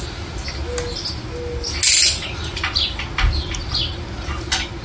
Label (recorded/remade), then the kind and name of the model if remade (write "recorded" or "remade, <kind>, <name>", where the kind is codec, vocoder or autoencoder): recorded